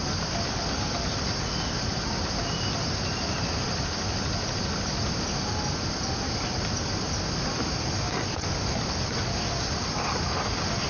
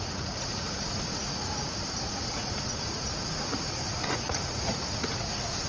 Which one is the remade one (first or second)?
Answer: second